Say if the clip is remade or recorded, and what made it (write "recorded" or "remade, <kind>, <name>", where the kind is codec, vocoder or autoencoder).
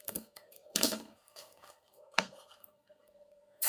remade, codec, SNAC